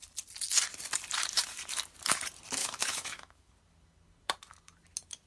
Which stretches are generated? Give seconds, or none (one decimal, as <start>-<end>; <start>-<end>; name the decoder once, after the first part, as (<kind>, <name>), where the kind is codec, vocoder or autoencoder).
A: 2.6-3.5 (autoencoder, DAC-VAE)